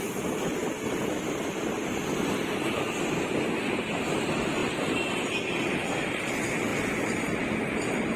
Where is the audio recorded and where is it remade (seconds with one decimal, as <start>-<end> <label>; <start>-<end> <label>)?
0.0-8.2 recorded

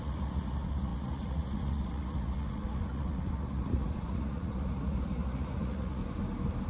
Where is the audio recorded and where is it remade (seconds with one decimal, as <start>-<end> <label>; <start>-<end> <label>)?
0.0-6.0 remade; 6.0-6.7 recorded

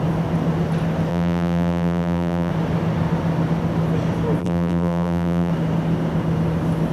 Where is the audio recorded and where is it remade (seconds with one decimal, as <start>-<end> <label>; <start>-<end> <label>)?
0.0-1.1 recorded; 1.1-2.5 remade; 2.5-4.4 recorded; 4.4-5.5 remade; 5.5-6.9 recorded

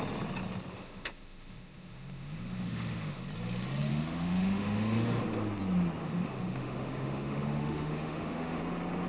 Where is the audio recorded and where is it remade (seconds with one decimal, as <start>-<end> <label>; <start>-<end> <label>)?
0.0-0.7 recorded; 0.7-3.2 remade; 3.2-3.9 recorded; 3.9-5.2 remade; 5.2-6.0 recorded; 6.0-8.6 remade; 8.6-9.1 recorded